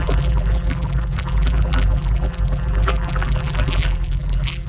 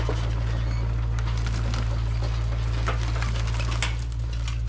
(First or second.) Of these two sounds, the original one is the second